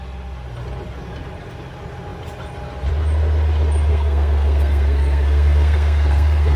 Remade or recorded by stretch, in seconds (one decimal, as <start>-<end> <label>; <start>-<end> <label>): 0.0-3.9 recorded; 3.9-6.6 remade